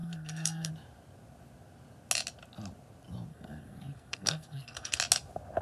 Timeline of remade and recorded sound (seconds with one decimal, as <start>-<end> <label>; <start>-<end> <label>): 0.0-0.7 remade; 0.7-3.3 recorded; 3.3-5.0 remade; 5.0-5.6 recorded